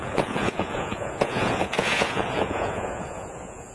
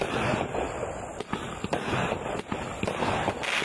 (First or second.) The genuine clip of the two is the second